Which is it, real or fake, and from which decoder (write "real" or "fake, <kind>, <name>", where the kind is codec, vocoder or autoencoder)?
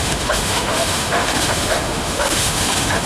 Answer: fake, autoencoder, DAC-VAE